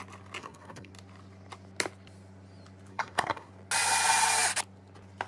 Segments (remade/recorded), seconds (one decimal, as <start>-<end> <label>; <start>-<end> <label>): 0.0-0.4 recorded; 0.4-0.9 remade; 0.9-2.9 recorded; 2.9-3.5 remade; 3.5-5.3 recorded